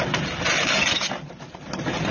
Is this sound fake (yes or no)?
no